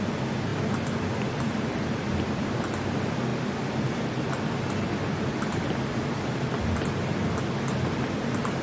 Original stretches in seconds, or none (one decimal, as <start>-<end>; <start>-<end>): 0.0-8.6